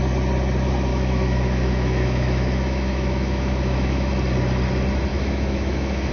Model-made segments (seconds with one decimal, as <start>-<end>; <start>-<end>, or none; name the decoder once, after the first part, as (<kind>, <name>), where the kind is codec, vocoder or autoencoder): 0.9-4.1 (autoencoder, DAC-VAE); 5.1-6.1

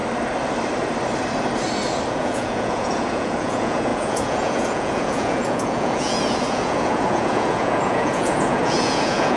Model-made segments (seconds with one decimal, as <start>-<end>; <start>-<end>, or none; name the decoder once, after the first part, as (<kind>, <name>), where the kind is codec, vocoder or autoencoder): 2.1-9.4 (vocoder, Vocos)

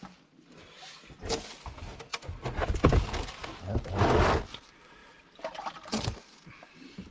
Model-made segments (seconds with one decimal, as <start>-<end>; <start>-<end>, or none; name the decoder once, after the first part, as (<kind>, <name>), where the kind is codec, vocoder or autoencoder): 3.4-4.0 (vocoder, BigVGAN v2); 5.0-5.6

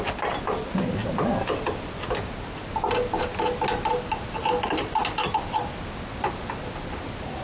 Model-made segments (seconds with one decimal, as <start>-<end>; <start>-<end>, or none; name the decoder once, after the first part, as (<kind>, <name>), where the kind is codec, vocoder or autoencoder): none

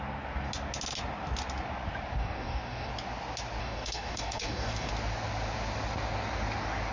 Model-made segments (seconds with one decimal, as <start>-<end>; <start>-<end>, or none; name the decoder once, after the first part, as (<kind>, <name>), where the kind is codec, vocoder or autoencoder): 2.2-2.9 (codec, DAC); 3.6-4.9